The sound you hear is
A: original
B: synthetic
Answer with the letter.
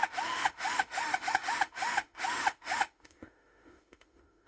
B